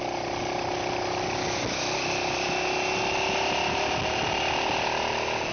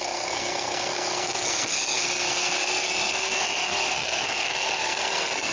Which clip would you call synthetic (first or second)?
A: second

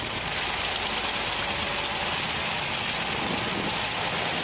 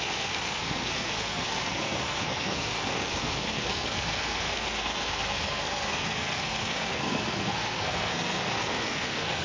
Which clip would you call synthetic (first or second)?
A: second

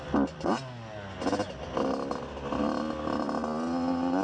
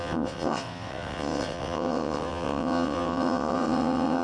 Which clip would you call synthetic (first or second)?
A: second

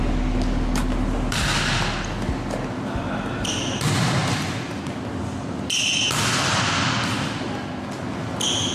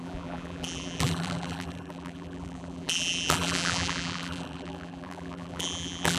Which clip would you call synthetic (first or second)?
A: second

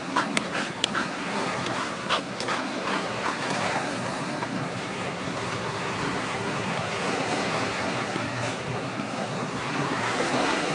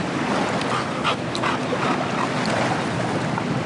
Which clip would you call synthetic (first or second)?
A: first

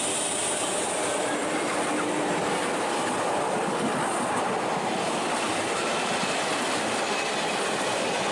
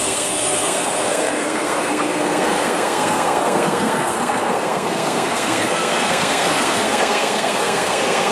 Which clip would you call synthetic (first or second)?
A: second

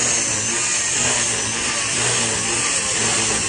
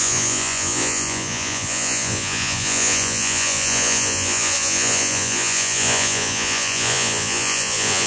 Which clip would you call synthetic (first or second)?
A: second